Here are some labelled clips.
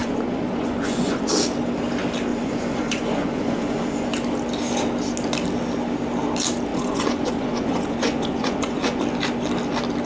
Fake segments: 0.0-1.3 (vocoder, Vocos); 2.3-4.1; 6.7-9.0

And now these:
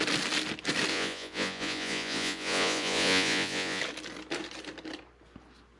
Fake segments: 0.9-3.8 (vocoder, Vocos)

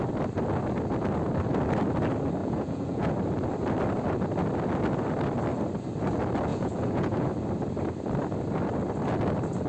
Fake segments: 2.4-3.1 (vocoder, Vocos); 6.5-7.3